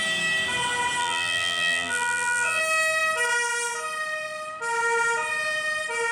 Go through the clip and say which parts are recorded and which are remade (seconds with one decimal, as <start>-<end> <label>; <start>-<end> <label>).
0.0-1.0 recorded; 1.0-2.6 remade; 2.6-6.1 recorded